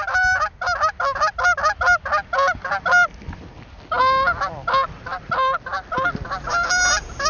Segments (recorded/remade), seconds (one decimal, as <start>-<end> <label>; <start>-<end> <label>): 0.0-7.3 recorded